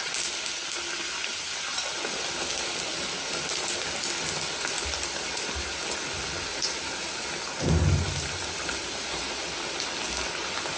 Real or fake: real